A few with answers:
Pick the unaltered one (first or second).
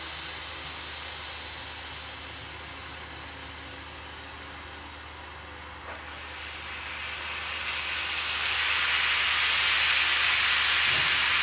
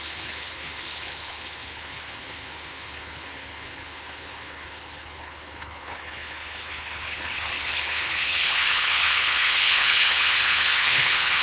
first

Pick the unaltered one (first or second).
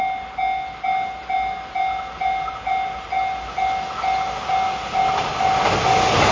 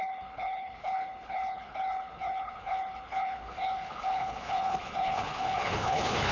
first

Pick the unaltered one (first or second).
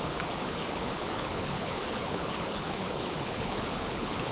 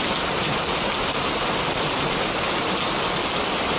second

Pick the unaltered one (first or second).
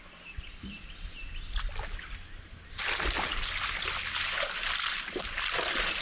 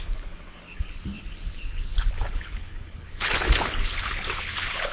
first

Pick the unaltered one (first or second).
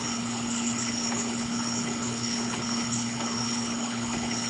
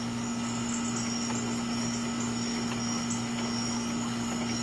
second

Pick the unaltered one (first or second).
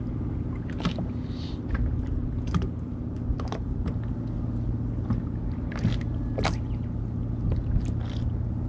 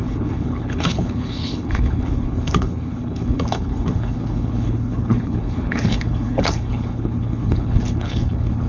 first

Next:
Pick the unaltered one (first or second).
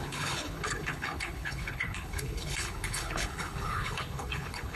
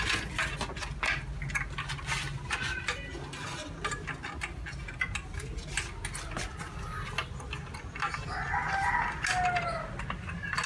second